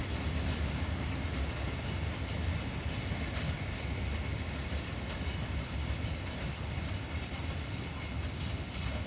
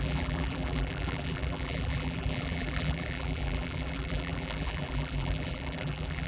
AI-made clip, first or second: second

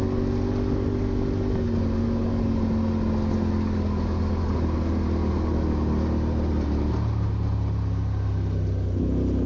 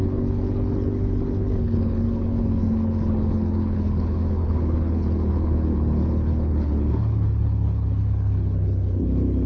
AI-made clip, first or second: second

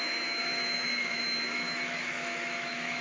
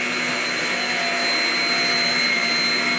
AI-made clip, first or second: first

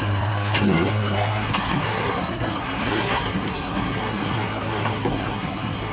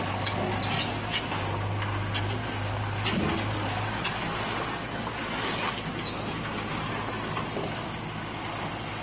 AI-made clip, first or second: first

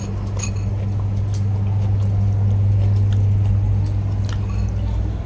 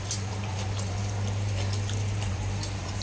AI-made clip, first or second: second